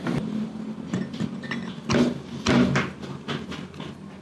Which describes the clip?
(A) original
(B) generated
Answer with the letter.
A